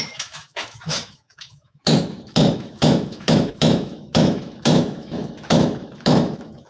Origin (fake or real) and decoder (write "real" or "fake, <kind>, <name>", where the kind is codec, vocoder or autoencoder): fake, autoencoder, DAC-VAE